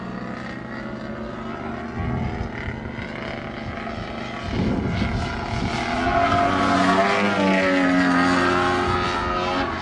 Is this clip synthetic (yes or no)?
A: no